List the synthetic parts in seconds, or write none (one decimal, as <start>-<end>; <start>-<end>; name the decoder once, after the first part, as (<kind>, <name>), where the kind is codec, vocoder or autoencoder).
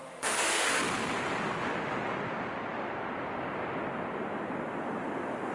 0.0-0.8 (autoencoder, DAC-VAE)